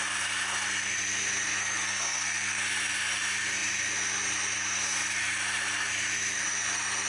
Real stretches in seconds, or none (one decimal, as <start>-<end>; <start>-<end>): 0.0-1.6; 2.6-7.1